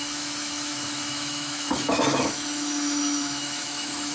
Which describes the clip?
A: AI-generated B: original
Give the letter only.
A